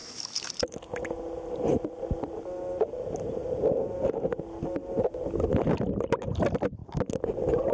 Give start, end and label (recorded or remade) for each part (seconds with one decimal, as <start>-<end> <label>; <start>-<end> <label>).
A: 0.0-0.5 remade; 0.5-7.7 recorded